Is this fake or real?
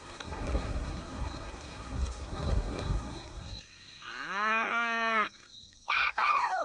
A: fake